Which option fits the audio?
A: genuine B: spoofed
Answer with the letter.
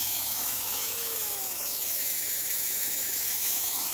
B